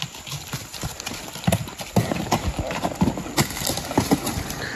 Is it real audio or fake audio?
real